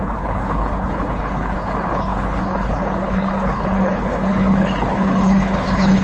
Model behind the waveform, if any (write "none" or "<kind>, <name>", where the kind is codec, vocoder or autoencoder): codec, HILCodec